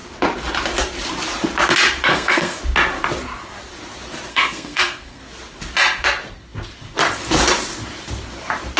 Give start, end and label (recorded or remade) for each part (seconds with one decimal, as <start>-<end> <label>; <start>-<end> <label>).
0.0-2.1 recorded; 2.1-2.6 remade; 2.6-4.3 recorded; 4.3-5.2 remade; 5.2-8.8 recorded